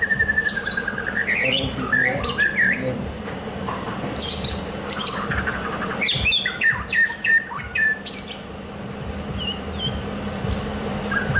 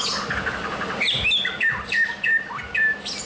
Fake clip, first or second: first